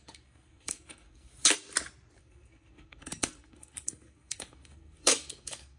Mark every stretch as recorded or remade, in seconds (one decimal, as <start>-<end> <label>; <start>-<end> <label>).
0.0-1.3 remade; 1.3-2.2 recorded; 2.2-5.8 remade